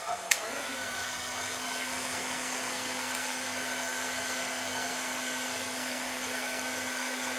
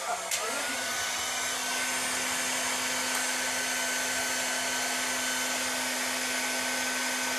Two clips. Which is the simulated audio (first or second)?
first